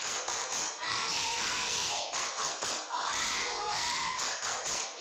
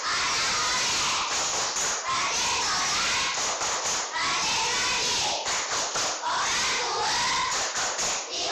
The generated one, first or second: first